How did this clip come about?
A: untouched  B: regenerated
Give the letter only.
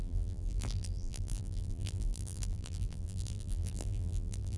B